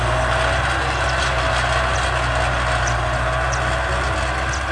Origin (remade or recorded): recorded